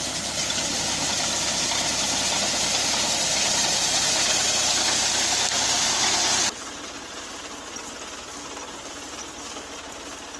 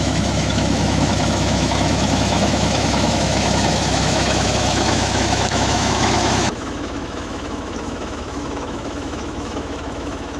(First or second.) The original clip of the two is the first